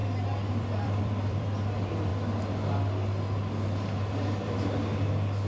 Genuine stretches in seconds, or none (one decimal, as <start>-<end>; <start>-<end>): 0.0-0.5; 2.1-5.5